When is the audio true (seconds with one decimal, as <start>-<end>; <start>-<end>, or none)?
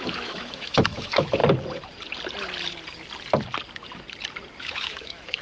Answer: 1.4-4.6